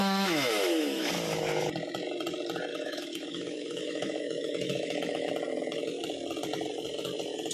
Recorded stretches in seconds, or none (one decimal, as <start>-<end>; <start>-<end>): 1.1-2.7; 5.3-7.5